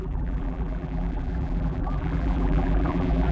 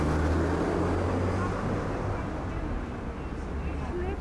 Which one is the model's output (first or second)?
first